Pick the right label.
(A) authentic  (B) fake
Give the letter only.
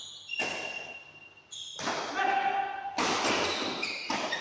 A